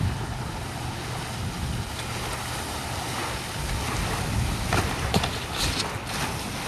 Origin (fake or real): real